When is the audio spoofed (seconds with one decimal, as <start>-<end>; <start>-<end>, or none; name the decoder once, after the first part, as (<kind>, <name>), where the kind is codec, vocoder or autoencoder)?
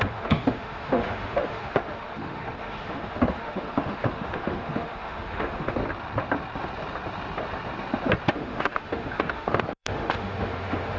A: 0.0-5.8 (autoencoder, DAC-VAE); 8.3-11.0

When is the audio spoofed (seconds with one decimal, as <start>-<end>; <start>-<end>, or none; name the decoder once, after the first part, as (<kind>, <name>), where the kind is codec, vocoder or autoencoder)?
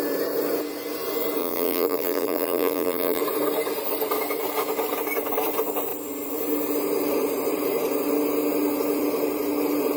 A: 1.4-3.2 (vocoder, BigVGAN v2)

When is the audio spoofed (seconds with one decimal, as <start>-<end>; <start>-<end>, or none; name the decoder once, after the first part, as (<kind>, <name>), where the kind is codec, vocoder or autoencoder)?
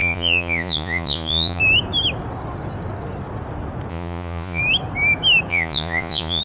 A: 0.0-1.6 (vocoder, Vocos); 3.9-4.6; 5.5-6.4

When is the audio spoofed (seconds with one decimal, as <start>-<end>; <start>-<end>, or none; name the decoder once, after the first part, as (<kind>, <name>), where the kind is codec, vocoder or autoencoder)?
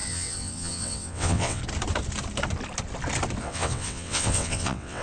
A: 0.0-1.6 (vocoder, WaveNeXt); 3.4-5.0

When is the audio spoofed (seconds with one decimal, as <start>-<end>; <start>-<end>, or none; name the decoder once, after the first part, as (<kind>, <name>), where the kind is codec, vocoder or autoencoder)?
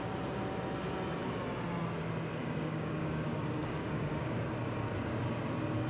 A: 2.4-4.4 (codec, DAC)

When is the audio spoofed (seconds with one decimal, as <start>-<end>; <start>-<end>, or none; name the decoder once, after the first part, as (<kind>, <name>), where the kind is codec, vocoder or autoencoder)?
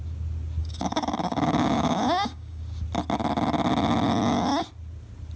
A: 0.6-2.6 (codec, DAC)